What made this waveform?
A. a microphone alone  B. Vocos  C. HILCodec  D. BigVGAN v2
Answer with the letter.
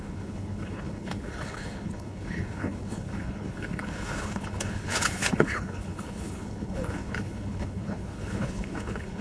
C